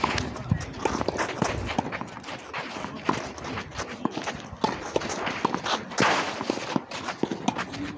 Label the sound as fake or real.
real